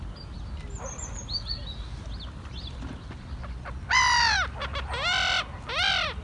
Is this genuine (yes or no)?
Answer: yes